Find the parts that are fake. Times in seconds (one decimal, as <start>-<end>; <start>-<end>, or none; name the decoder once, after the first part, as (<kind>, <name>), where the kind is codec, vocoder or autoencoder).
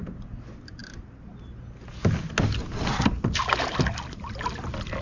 none